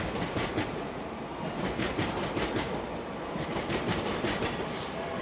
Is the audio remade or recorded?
recorded